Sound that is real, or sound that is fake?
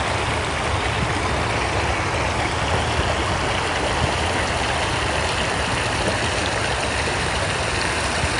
real